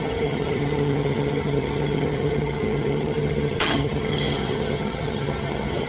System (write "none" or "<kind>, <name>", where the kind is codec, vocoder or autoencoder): vocoder, HiFi-GAN